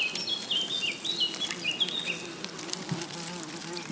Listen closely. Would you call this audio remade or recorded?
recorded